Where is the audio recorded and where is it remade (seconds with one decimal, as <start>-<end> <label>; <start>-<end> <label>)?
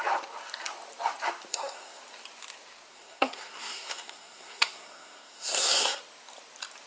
0.0-1.5 recorded; 1.5-2.0 remade; 2.0-2.9 recorded; 2.9-6.0 remade; 6.0-6.9 recorded